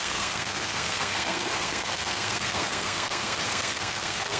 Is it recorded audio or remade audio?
remade